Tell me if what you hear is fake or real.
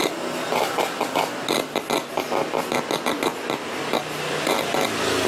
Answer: real